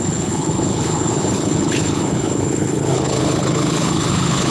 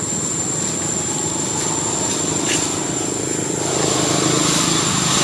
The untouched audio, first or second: second